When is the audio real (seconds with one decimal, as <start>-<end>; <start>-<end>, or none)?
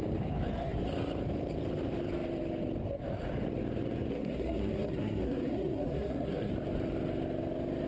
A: 0.0-4.1; 6.5-7.9